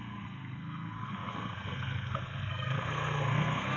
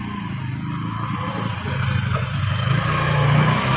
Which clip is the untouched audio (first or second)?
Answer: second